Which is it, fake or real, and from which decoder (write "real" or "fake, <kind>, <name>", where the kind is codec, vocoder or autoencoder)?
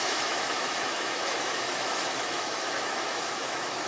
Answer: fake, autoencoder, DAC-VAE